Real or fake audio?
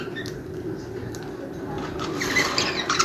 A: real